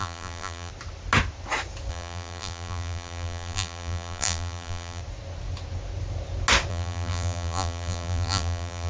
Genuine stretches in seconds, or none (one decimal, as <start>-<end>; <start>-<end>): 0.7-1.9; 5.0-6.7